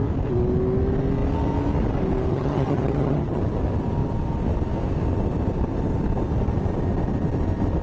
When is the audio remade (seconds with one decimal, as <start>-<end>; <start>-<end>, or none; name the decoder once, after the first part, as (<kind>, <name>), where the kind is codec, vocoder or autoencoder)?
2.3-3.4 (vocoder, HiFi-GAN)